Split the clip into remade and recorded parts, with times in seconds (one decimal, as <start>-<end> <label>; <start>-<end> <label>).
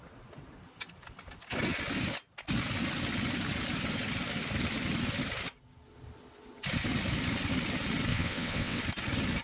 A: 0.0-8.1 recorded; 8.1-8.8 remade; 8.8-9.4 recorded